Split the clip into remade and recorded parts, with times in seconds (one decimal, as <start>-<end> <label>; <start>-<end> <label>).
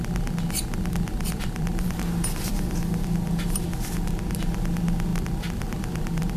0.0-1.1 recorded; 1.1-3.0 remade; 3.0-5.1 recorded; 5.1-6.4 remade